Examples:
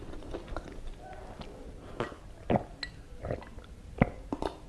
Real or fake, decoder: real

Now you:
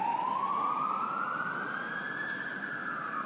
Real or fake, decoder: real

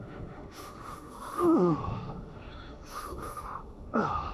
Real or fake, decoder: fake, autoencoder, DAC-VAE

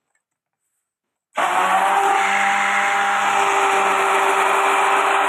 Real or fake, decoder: real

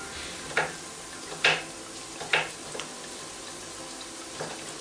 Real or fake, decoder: real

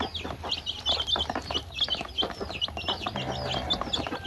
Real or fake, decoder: real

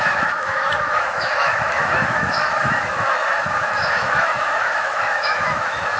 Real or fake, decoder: fake, autoencoder, DAC-VAE